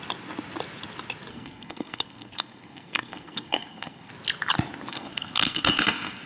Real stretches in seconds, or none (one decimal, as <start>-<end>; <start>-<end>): 0.0-1.3; 4.1-4.9